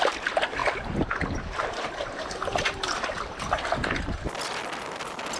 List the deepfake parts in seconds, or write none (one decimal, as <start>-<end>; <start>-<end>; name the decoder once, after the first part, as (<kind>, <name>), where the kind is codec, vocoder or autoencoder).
none